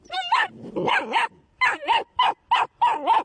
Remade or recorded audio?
recorded